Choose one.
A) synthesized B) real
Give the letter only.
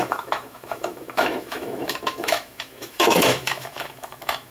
A